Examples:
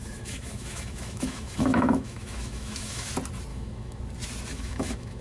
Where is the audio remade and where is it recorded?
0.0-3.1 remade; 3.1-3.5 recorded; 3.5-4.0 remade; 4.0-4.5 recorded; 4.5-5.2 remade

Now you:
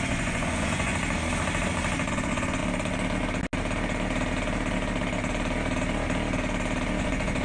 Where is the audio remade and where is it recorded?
0.0-0.9 remade; 0.9-2.1 recorded; 2.1-2.6 remade; 2.6-7.0 recorded; 7.0-7.4 remade

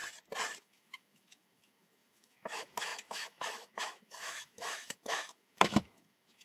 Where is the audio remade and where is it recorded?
0.0-0.6 recorded; 0.6-6.4 remade